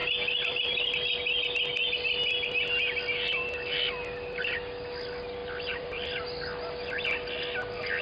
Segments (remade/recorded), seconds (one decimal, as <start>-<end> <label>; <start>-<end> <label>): 0.0-5.4 recorded; 5.4-6.1 remade; 6.1-8.0 recorded